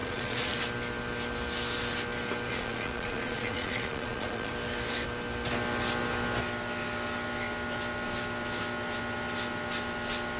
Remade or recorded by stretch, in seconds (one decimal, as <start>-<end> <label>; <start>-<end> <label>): 0.0-0.5 remade; 0.5-2.5 recorded; 2.5-4.5 remade; 4.5-10.4 recorded